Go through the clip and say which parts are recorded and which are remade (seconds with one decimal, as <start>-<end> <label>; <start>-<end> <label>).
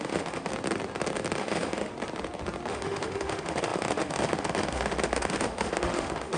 0.0-0.5 remade; 0.5-1.4 recorded; 1.4-1.9 remade; 1.9-2.7 recorded; 2.7-6.4 remade